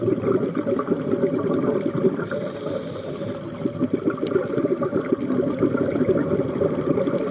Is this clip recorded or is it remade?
recorded